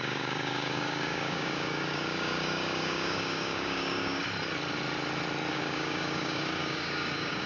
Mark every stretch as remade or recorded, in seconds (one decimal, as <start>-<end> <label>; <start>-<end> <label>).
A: 0.0-4.2 remade; 4.2-5.5 recorded; 5.5-7.5 remade